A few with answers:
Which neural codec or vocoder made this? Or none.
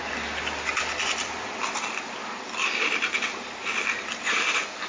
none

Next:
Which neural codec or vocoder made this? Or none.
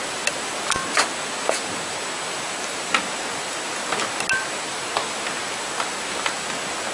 none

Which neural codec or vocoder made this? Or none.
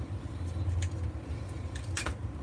none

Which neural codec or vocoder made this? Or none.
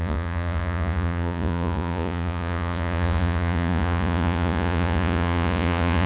vocoder, Vocos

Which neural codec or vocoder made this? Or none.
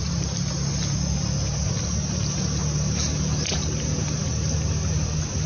none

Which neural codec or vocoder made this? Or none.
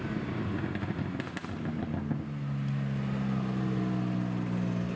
none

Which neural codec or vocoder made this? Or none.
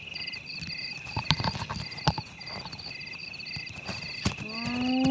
none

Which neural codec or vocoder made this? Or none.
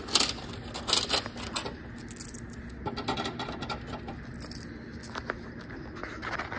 none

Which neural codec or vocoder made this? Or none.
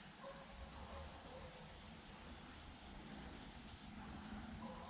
none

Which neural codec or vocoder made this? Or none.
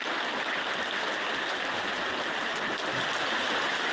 none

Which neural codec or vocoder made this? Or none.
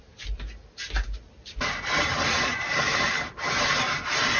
none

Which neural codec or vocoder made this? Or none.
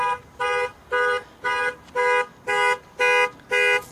none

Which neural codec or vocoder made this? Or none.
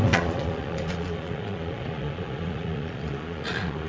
vocoder, Vocos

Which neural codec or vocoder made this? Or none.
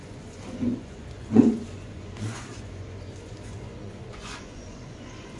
vocoder, Vocos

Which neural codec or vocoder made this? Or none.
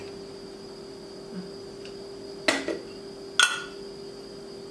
none